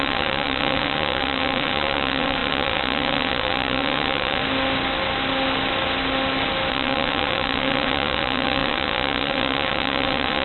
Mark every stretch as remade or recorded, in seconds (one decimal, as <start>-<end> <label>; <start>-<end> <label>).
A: 0.0-4.4 remade; 4.4-6.7 recorded; 6.7-10.4 remade

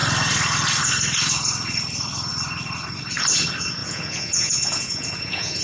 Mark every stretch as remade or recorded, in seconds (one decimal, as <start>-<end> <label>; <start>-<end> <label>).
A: 0.0-3.8 recorded; 3.8-5.6 remade

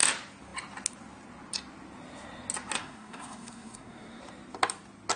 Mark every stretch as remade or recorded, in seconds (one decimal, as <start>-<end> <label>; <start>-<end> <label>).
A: 0.0-2.8 recorded; 2.8-4.2 remade; 4.2-5.2 recorded

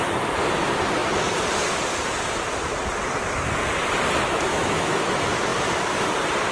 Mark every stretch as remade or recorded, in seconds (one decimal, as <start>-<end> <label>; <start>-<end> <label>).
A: 0.0-4.5 recorded; 4.5-5.1 remade; 5.1-6.5 recorded

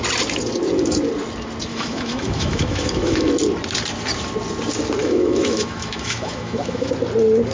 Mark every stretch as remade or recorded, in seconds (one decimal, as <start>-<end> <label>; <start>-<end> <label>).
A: 0.0-1.7 recorded; 1.7-3.3 remade; 3.3-5.0 recorded; 5.0-6.9 remade; 6.9-7.5 recorded

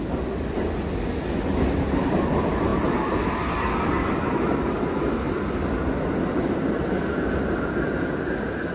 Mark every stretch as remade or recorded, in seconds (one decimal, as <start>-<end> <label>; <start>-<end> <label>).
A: 0.0-8.7 recorded

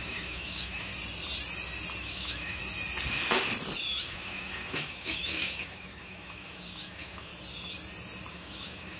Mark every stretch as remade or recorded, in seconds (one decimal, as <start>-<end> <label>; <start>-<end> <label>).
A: 0.0-0.9 remade; 0.9-2.0 recorded; 2.0-2.6 remade; 2.6-4.0 recorded; 4.0-7.3 remade; 7.3-8.3 recorded; 8.3-9.0 remade

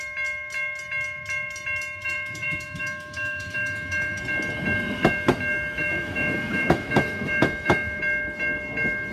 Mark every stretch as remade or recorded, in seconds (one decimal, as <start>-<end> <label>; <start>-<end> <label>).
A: 0.0-2.0 recorded; 2.0-4.2 remade; 4.2-5.8 recorded; 5.8-8.0 remade; 8.0-9.1 recorded